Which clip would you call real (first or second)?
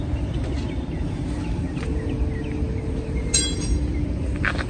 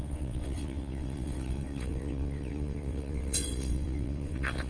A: first